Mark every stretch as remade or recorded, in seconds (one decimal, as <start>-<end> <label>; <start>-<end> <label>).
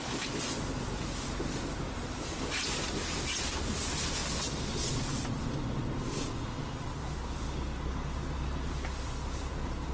0.0-9.9 recorded